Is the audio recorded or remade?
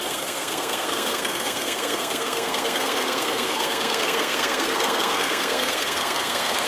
remade